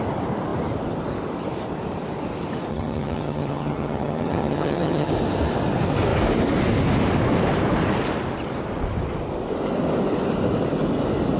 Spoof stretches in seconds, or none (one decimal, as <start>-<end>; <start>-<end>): 2.7-5.1

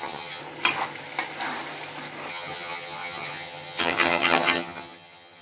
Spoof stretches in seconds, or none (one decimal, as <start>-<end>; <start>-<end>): 0.0-0.4; 2.3-5.4

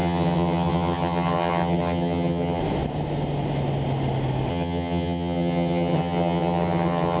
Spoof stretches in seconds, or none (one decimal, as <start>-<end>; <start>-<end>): 0.0-2.6; 4.5-7.2

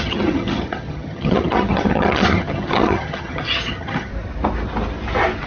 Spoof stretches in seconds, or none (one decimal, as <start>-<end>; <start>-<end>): 0.0-4.1

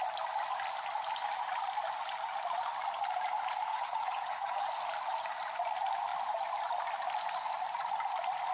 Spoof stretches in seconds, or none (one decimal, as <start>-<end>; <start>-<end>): 3.7-4.7